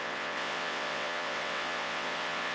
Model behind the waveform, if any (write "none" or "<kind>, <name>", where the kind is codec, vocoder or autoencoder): vocoder, WaveNeXt